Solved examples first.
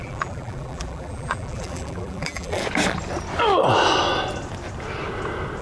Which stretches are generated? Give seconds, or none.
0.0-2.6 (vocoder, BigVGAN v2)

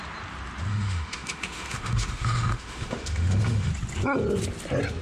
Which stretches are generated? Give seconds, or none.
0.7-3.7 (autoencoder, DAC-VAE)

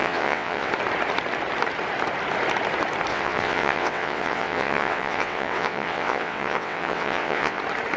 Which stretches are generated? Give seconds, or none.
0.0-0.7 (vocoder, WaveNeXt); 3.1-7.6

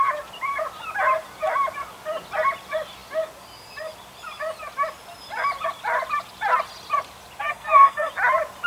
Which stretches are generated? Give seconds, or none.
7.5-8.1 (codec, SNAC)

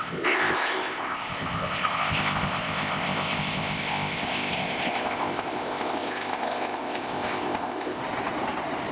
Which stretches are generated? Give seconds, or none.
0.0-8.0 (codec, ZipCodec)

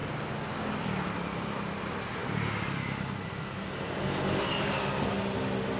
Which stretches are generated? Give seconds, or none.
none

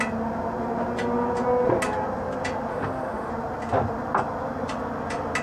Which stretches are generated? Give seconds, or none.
2.7-3.3 (autoencoder, DAC-VAE)

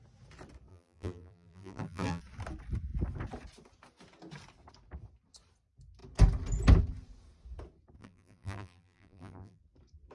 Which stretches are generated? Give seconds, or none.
0.7-2.2 (vocoder, BigVGAN v2); 8.0-9.6